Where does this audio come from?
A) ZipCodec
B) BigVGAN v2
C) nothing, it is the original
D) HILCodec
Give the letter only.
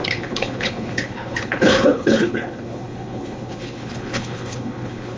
D